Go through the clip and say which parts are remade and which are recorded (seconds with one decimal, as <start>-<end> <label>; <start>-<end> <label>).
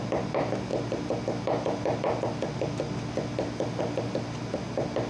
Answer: 0.0-5.1 recorded